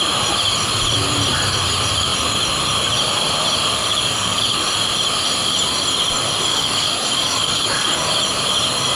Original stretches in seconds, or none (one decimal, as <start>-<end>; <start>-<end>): 0.0-3.8; 4.6-6.5; 7.9-8.9